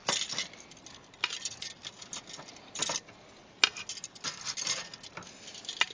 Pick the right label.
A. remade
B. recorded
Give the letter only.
B